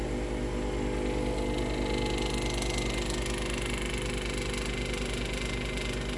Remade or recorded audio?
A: recorded